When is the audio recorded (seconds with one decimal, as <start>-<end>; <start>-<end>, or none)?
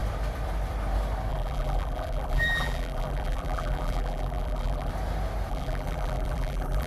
0.0-1.3; 4.9-5.5